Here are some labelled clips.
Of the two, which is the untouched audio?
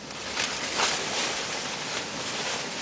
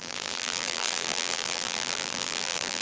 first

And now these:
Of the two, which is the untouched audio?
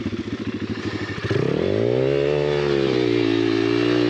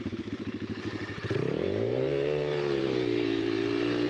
first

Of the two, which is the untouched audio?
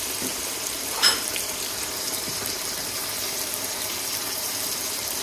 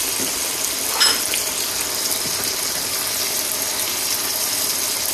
second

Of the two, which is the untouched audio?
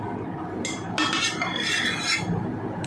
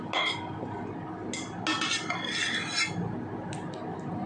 second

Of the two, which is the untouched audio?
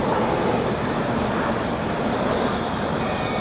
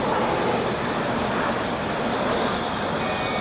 second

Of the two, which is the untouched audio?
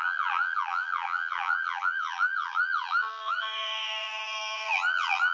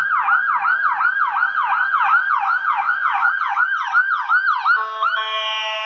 second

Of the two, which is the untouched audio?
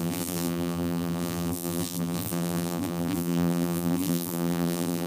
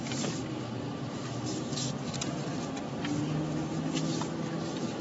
second